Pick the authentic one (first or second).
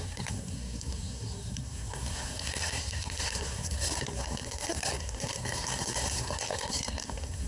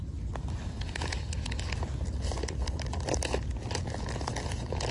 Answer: second